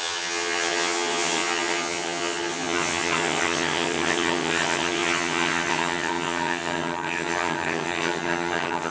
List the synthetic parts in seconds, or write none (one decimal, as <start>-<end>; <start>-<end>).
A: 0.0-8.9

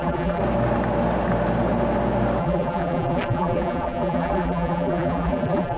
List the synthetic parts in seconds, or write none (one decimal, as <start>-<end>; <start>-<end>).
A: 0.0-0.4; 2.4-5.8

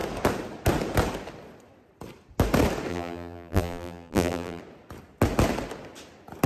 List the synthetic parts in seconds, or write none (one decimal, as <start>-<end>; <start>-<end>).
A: 2.9-4.6